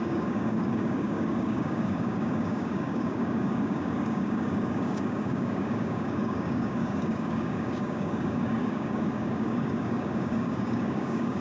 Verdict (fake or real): fake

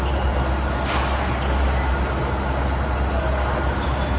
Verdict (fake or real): real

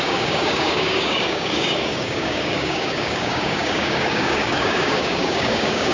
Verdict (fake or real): fake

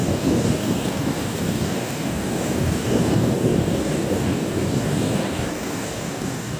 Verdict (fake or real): fake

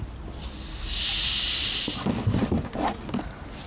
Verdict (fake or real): real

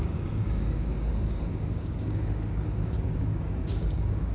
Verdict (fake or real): fake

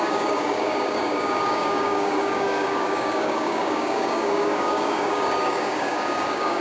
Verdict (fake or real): fake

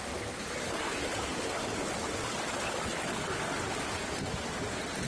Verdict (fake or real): real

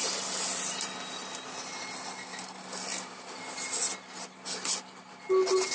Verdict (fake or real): real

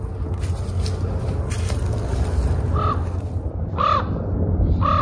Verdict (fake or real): real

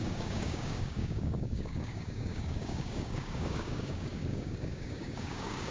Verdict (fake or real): fake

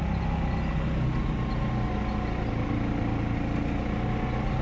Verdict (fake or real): real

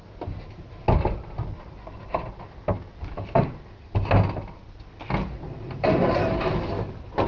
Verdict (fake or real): real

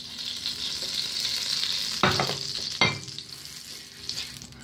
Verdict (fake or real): real